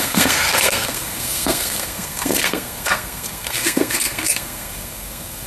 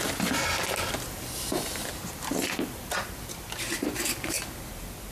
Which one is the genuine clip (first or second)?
second